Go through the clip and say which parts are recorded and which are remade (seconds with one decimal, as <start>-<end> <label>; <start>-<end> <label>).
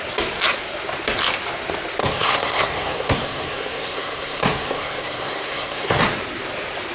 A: 0.0-2.0 recorded; 2.0-6.0 remade; 6.0-6.9 recorded